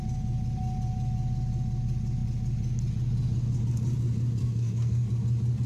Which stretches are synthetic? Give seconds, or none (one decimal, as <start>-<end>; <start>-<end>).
4.4-5.1